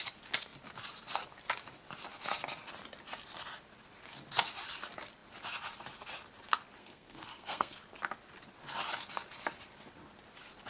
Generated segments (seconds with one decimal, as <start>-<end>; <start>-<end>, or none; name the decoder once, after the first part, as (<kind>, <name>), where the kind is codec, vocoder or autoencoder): 6.8-7.8 (codec, SNAC)